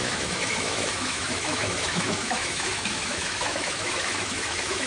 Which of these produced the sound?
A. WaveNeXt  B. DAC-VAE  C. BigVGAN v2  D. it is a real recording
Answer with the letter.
B